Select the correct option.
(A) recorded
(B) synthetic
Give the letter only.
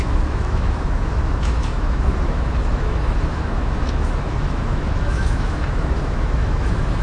B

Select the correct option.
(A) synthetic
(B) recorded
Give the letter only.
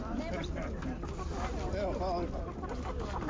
B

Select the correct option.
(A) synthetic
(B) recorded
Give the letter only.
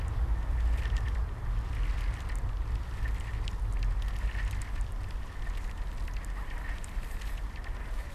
B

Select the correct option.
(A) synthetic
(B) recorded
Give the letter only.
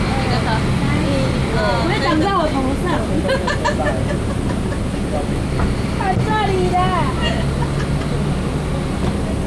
B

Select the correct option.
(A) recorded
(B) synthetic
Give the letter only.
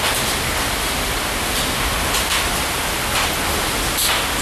A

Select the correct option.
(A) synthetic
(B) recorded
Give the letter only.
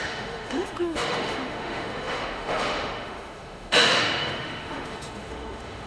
A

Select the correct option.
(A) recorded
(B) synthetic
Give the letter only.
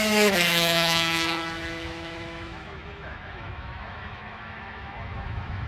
B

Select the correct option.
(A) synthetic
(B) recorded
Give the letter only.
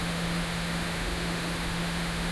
A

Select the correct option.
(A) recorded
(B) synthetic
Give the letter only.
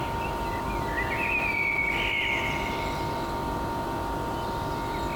A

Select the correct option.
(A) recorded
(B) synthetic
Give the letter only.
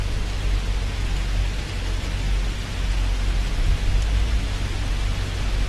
A